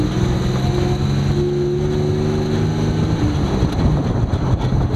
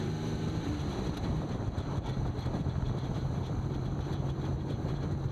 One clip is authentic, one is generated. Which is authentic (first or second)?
first